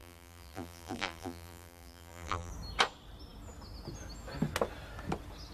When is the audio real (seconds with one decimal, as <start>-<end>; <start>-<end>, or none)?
2.5-5.5